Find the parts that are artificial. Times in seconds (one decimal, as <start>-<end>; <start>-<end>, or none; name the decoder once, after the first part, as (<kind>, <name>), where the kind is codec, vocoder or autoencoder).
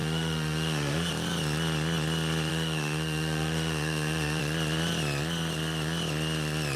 0.0-1.1 (autoencoder, DAC-VAE); 2.5-4.4